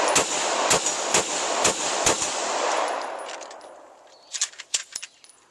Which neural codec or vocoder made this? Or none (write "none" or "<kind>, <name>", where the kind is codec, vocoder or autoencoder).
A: none